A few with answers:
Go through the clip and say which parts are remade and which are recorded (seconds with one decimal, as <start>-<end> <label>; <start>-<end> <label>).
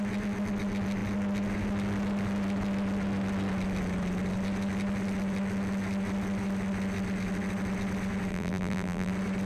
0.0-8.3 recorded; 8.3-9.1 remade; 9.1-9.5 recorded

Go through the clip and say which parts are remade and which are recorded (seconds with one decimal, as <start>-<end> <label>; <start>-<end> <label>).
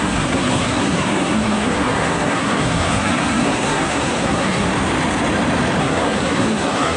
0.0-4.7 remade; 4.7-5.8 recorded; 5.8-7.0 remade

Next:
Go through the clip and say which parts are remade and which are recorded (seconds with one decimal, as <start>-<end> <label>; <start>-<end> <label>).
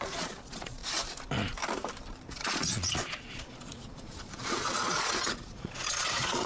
0.0-0.8 remade; 0.8-2.3 recorded; 2.3-6.5 remade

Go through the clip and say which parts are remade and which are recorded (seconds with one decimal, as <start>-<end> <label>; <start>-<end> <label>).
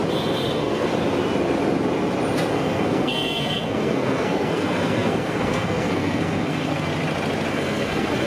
0.0-0.5 recorded; 0.5-0.9 remade; 0.9-2.5 recorded; 2.5-6.9 remade; 6.9-7.5 recorded; 7.5-8.3 remade